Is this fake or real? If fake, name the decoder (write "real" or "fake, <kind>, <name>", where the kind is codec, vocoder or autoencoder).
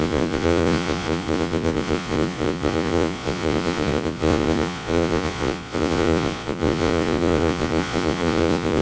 fake, vocoder, Vocos